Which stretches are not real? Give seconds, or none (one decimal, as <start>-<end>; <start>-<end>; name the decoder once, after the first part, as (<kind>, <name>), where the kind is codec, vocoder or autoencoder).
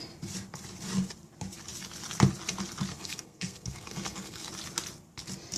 2.9-4.5 (codec, SNAC)